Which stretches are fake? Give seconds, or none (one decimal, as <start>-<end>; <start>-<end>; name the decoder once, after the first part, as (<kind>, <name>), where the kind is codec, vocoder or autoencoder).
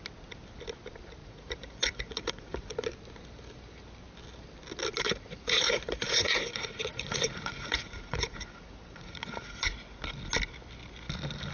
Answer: 1.2-2.7 (vocoder, Vocos); 5.0-10.0